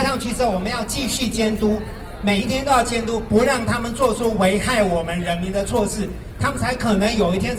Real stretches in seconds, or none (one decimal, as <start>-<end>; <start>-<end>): 2.4-6.1